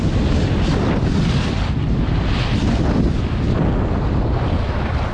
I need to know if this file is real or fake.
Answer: fake